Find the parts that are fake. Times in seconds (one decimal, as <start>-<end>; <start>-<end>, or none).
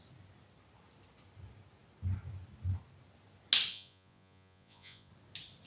3.7-5.1